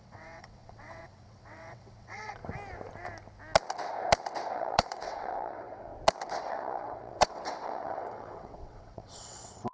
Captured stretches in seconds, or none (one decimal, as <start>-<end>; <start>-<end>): 2.4-4.5; 5.9-6.4

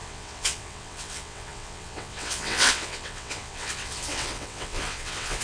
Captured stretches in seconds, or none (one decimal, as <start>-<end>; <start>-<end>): none

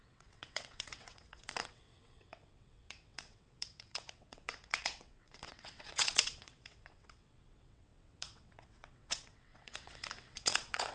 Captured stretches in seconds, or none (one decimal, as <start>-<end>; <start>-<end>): none

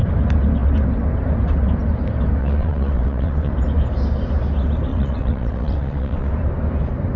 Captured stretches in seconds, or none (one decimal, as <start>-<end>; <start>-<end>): 0.0-2.4; 3.5-4.9; 6.3-7.2

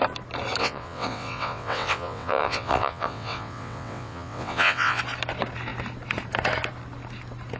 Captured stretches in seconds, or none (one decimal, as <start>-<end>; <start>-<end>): 0.0-0.6; 5.0-7.6